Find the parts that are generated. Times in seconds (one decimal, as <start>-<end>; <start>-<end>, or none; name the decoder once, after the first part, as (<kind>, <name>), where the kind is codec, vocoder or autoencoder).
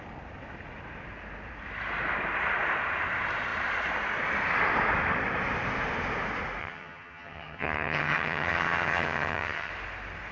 6.6-9.7 (vocoder, HiFi-GAN)